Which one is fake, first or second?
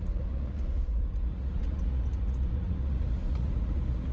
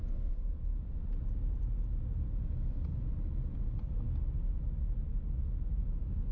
first